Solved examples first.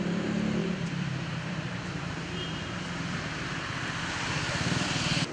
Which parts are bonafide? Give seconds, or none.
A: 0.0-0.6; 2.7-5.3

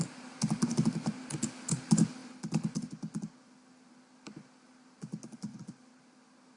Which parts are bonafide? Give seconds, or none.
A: 0.0-6.6

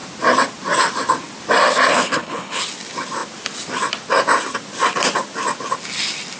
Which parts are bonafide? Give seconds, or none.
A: 0.0-1.9; 2.6-6.4

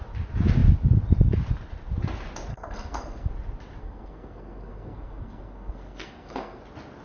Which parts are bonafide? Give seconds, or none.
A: 0.0-2.5; 3.3-3.8; 6.6-7.0

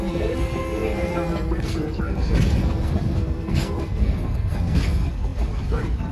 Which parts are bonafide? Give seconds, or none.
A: none

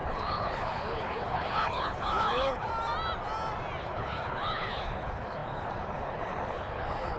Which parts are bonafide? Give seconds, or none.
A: 2.7-3.8

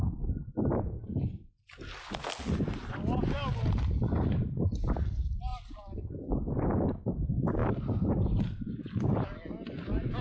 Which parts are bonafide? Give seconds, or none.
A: 0.0-5.5; 7.1-10.2